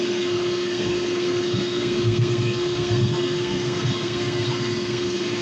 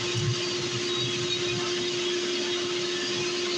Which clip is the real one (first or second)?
second